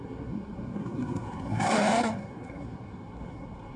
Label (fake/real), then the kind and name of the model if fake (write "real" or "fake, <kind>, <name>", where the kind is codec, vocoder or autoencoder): fake, codec, SNAC